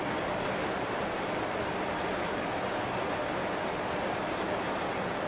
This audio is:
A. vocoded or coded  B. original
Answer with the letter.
B